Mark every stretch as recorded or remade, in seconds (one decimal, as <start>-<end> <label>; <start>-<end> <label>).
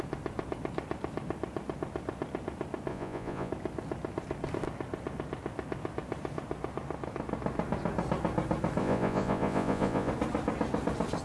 0.0-2.9 recorded; 2.9-3.5 remade; 3.5-8.8 recorded; 8.8-10.1 remade; 10.1-11.2 recorded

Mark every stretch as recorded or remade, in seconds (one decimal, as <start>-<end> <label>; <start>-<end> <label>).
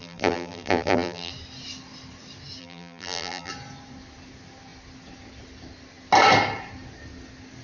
0.0-1.3 remade; 1.3-2.6 recorded; 2.6-3.5 remade; 3.5-7.6 recorded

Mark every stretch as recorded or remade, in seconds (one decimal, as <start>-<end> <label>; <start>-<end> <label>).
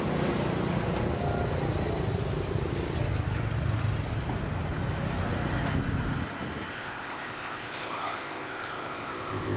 0.0-6.7 recorded; 6.7-9.6 remade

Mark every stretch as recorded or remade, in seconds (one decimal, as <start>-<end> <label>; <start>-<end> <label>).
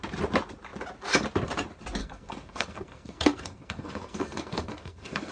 0.0-2.0 recorded; 2.0-5.3 remade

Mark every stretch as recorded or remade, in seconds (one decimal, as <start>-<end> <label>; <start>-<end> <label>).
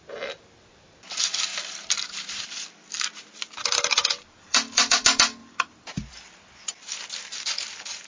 0.0-4.0 recorded; 4.0-5.0 remade; 5.0-5.4 recorded; 5.4-6.1 remade; 6.1-8.1 recorded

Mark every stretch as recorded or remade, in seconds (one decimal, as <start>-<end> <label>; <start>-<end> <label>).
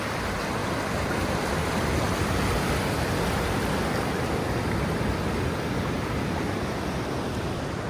0.0-7.9 recorded